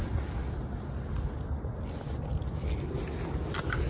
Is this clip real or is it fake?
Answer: real